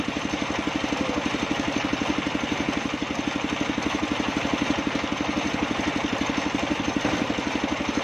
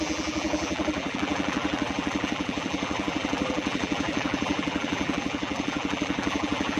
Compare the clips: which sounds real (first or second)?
first